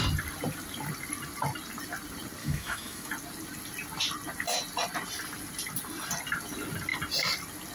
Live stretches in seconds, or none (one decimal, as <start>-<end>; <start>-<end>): 0.0-2.4; 3.1-7.7